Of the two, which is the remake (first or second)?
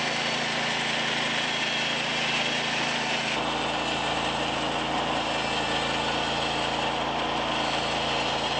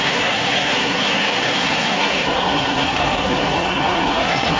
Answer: second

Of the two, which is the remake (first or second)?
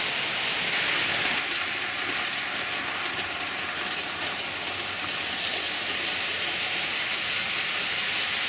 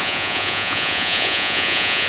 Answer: second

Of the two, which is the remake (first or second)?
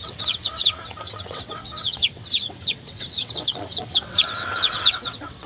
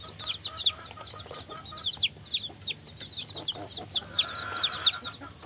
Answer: first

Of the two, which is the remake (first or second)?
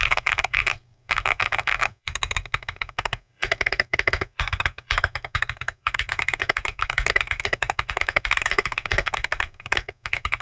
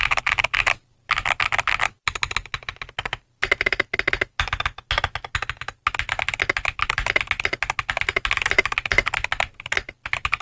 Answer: first